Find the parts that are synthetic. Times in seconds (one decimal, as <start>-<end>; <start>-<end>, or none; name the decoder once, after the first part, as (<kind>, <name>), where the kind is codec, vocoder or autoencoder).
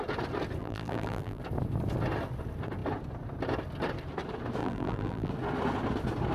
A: 0.6-1.4 (vocoder, BigVGAN v2); 4.6-5.3